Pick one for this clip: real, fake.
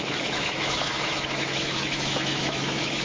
fake